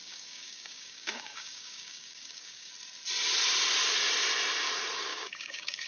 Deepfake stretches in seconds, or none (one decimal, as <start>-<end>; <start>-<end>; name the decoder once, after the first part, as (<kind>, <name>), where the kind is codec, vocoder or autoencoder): 0.0-2.7 (codec, DAC); 5.1-5.9